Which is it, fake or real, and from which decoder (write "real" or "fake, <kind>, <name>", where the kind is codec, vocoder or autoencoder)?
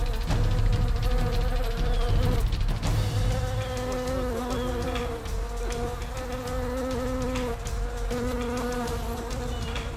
real